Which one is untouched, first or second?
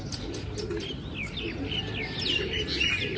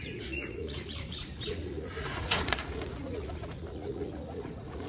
first